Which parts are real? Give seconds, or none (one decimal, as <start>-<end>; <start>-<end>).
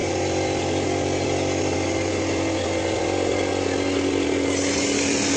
0.0-5.4